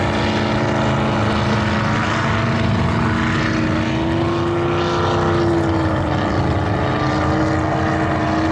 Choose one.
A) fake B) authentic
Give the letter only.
B